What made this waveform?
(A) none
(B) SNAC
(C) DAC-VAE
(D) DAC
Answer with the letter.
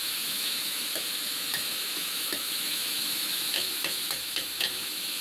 C